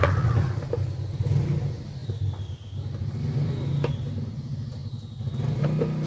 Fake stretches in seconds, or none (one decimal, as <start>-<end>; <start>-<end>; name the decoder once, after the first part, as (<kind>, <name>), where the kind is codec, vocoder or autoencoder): 0.0-0.6 (vocoder, Vocos)